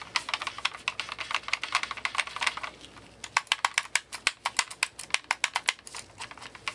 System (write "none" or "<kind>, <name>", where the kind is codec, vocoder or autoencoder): none